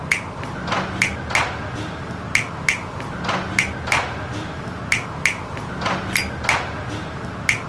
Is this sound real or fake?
real